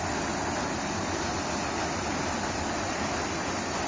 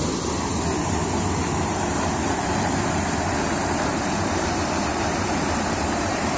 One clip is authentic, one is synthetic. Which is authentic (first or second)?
first